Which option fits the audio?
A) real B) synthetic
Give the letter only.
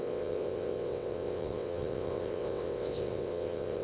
B